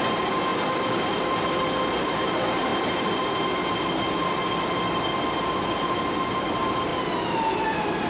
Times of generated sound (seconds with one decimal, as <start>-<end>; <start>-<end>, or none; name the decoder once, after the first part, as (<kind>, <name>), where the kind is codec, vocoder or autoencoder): none